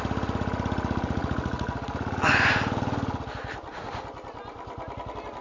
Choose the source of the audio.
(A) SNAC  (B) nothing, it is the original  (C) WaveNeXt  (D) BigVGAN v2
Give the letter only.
B